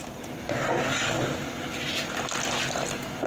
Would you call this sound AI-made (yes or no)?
no